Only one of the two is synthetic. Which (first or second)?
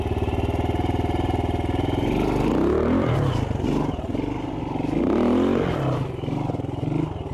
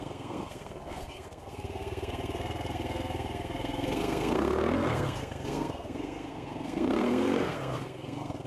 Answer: second